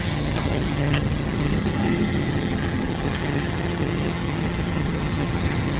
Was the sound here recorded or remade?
remade